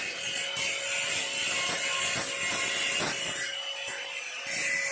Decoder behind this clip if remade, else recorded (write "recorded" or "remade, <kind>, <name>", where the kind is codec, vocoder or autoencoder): recorded